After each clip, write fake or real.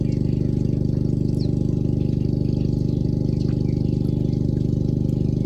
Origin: real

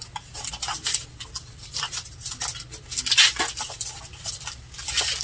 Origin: real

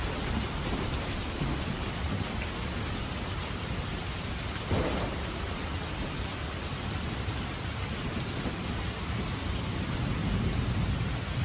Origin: real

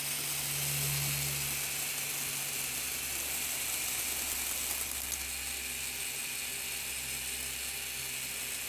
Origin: real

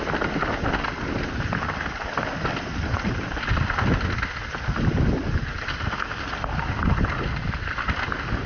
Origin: real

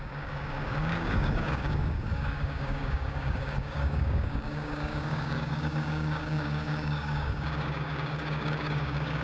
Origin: fake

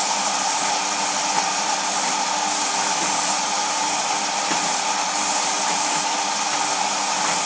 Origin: real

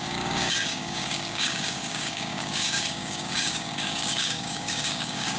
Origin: fake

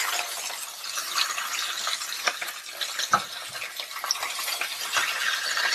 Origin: real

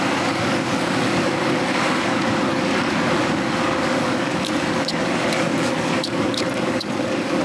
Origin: fake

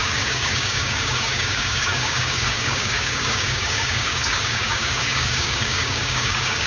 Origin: fake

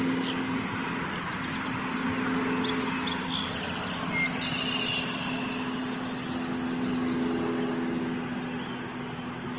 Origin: real